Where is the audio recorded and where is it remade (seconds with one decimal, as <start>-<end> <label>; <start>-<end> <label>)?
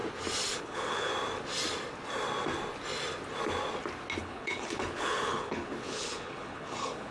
0.0-0.6 recorded; 0.6-1.1 remade; 1.1-4.2 recorded; 4.2-7.1 remade